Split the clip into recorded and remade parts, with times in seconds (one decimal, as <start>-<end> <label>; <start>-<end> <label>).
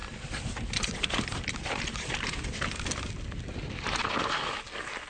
0.0-5.1 recorded